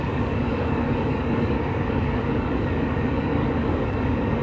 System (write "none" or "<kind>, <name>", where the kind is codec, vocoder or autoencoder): codec, DAC